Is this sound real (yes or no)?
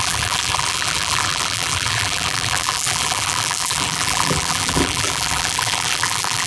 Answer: no